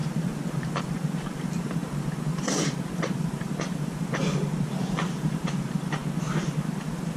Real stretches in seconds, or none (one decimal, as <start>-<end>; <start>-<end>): 6.0-6.7